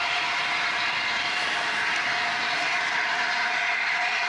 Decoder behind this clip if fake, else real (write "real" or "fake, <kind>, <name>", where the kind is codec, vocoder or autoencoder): real